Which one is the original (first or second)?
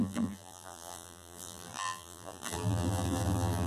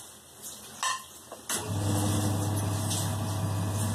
second